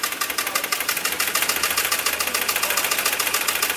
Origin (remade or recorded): recorded